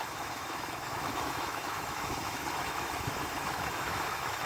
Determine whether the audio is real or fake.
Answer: fake